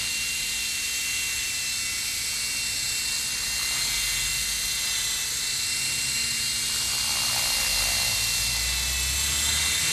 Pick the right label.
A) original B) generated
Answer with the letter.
A